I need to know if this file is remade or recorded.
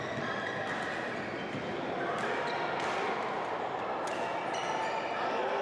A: recorded